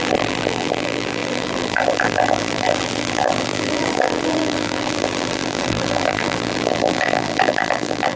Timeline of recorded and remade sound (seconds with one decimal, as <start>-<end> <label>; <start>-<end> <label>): 0.0-8.2 remade